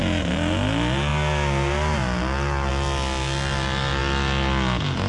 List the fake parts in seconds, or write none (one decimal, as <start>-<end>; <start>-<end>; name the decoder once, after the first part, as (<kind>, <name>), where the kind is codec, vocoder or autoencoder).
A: none